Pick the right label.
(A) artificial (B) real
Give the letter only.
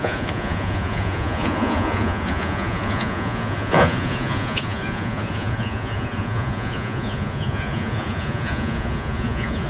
A